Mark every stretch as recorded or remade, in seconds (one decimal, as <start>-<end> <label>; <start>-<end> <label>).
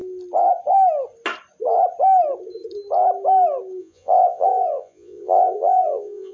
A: 0.0-3.8 recorded; 3.8-6.3 remade